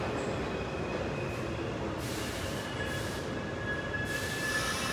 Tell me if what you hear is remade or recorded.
recorded